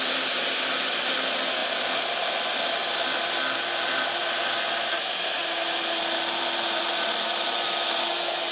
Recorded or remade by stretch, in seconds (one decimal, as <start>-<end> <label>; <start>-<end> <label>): 0.0-8.5 recorded